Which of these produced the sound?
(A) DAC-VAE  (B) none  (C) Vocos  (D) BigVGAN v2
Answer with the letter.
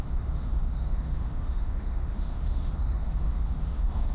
A